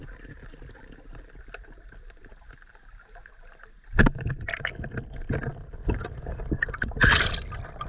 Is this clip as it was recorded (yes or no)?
yes